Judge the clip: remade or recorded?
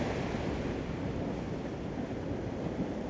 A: recorded